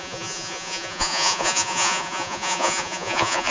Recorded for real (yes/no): no